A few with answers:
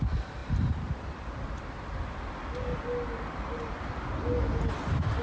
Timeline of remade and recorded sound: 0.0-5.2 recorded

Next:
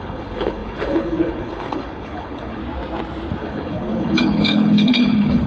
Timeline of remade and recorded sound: 0.0-2.6 remade; 2.6-3.4 recorded; 3.4-5.5 remade

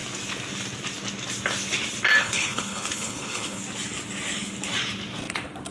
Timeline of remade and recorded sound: 0.0-2.2 recorded; 2.2-3.6 remade; 3.6-5.7 recorded

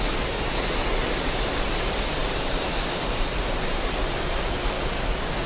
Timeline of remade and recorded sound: 0.0-5.5 recorded